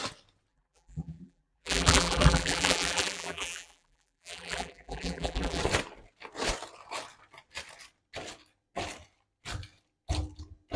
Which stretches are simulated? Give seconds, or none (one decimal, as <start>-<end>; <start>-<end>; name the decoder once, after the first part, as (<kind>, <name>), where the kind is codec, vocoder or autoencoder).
0.5-5.6 (vocoder, BigVGAN v2)